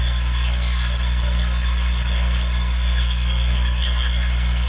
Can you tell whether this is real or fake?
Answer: fake